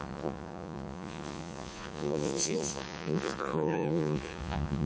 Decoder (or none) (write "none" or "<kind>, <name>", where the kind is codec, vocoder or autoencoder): vocoder, Vocos